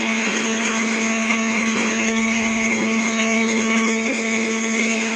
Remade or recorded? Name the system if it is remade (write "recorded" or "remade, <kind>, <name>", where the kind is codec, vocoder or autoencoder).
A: remade, codec, SNAC